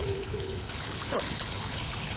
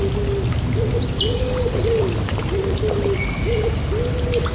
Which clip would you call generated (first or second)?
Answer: first